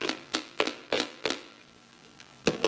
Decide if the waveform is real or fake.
fake